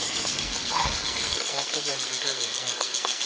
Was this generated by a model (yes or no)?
yes